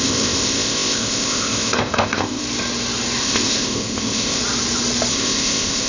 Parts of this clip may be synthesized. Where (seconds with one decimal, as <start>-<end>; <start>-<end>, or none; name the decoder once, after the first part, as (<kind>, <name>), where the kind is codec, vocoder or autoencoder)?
0.0-2.4 (codec, ZipCodec); 3.2-4.4; 5.1-5.9